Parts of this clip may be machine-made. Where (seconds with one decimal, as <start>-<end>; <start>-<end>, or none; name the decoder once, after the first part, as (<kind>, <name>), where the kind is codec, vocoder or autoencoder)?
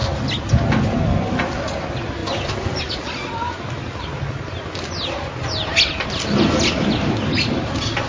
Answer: none